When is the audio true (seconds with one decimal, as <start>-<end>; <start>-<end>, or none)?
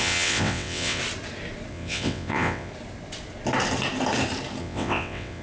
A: 1.0-1.7; 2.7-4.6